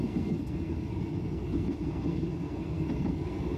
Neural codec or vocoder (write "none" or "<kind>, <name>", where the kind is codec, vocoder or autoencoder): codec, SNAC